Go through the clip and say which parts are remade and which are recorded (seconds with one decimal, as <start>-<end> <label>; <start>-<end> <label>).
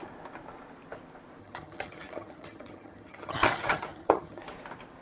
0.0-1.4 recorded; 1.4-4.4 remade; 4.4-5.0 recorded